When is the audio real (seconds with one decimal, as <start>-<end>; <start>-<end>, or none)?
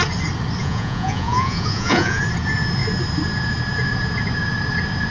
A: 0.0-0.6; 2.2-5.1